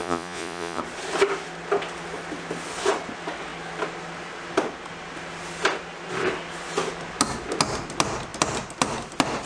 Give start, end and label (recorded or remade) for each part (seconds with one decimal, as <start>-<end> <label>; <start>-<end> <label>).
0.0-0.8 remade; 0.8-9.5 recorded